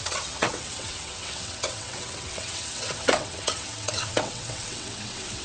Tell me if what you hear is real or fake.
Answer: fake